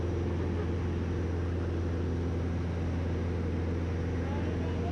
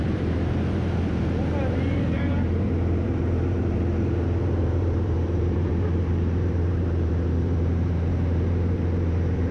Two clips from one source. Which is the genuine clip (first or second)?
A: first